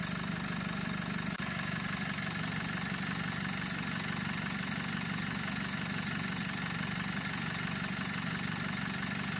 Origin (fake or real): real